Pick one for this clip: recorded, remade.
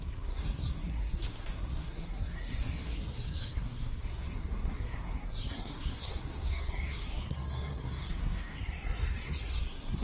remade